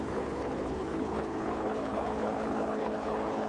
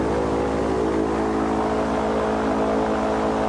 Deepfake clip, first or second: first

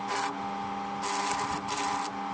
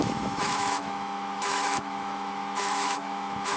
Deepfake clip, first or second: second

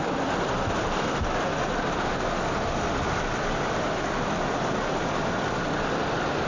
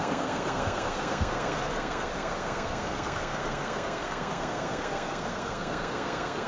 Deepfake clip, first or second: second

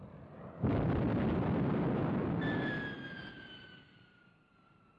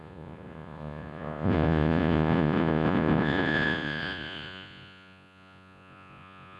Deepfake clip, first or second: second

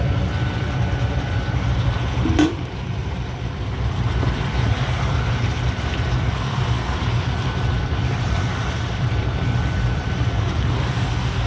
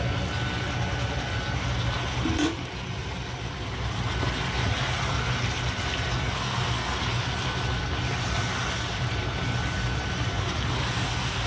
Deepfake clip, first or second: first